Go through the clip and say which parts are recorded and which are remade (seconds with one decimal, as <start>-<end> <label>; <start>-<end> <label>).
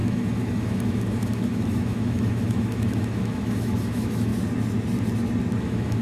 0.0-4.3 remade; 4.3-5.6 recorded; 5.6-6.0 remade